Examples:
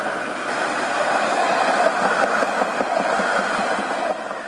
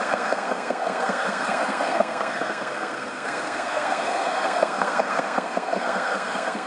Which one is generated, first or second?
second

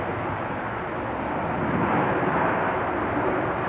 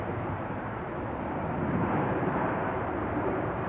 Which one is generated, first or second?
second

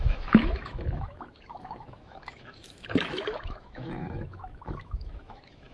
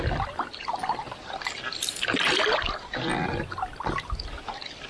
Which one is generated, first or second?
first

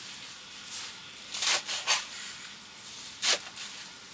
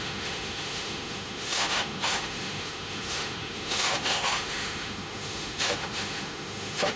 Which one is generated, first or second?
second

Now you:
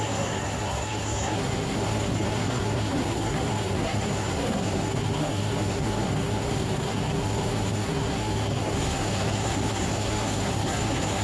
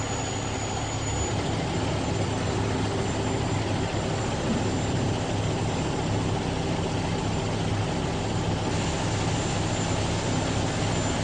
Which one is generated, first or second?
first